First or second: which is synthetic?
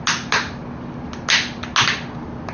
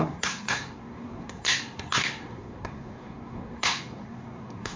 second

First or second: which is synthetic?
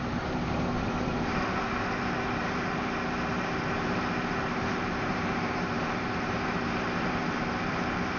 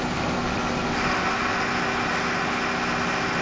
first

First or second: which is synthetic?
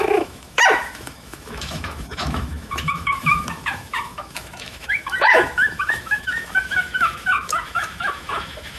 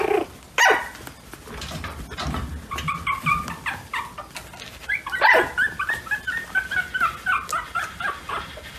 first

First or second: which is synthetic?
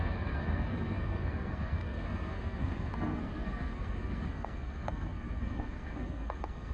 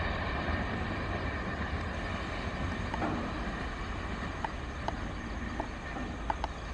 first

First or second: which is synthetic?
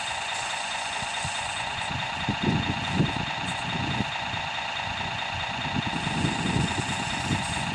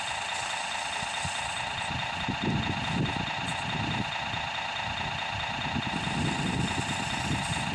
first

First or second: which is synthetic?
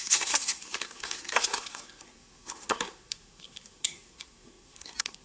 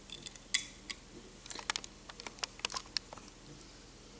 first